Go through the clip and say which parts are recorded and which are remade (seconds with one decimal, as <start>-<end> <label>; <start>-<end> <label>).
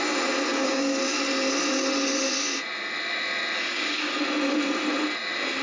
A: 0.0-0.5 recorded; 0.5-1.0 remade; 1.0-3.7 recorded; 3.7-4.2 remade; 4.2-5.6 recorded